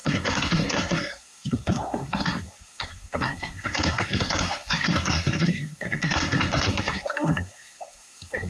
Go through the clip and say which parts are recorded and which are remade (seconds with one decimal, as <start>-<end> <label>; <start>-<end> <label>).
0.0-8.5 remade